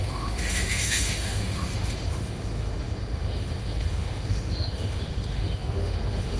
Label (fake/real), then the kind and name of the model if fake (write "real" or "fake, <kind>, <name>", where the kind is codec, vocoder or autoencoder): fake, autoencoder, DAC-VAE